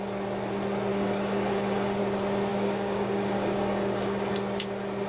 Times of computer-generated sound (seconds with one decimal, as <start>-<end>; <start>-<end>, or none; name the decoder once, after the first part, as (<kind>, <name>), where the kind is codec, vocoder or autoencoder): 0.9-2.0 (codec, DAC); 2.5-4.3